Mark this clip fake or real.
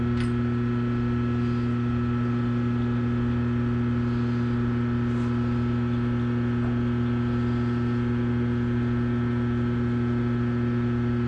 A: real